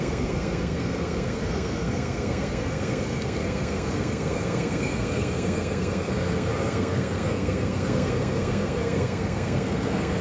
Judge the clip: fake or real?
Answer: fake